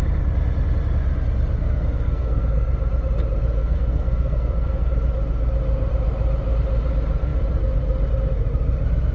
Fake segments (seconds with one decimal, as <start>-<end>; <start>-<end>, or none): 1.6-2.7; 3.6-4.9